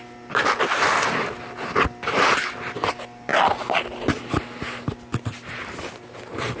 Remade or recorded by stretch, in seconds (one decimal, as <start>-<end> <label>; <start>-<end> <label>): 0.0-6.6 recorded